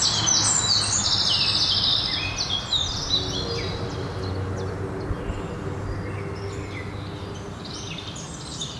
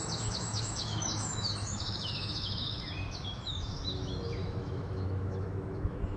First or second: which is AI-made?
second